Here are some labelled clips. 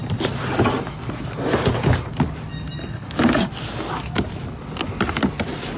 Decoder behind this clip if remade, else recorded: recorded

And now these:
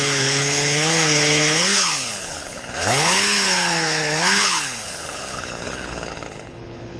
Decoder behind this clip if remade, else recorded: remade, codec, HILCodec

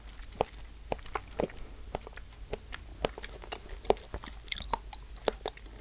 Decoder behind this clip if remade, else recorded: recorded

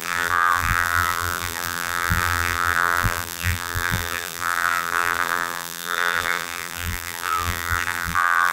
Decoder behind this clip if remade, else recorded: remade, vocoder, BigVGAN v2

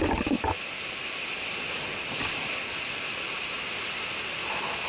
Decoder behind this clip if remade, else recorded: recorded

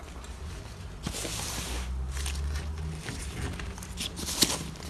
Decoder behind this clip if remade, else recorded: recorded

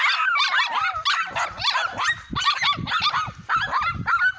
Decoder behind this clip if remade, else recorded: recorded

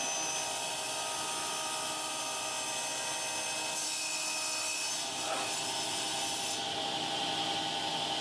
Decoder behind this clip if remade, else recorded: recorded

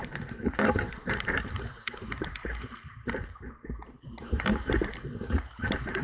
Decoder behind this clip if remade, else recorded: remade, vocoder, BigVGAN v2